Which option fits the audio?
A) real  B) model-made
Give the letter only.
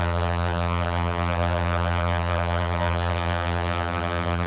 B